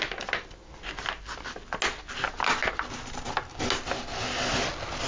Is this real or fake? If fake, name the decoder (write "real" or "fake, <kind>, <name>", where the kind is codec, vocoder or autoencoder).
real